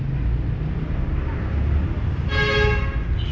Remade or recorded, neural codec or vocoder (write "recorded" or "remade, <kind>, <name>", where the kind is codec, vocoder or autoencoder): recorded